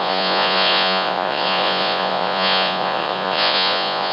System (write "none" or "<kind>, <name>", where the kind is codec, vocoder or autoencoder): vocoder, Vocos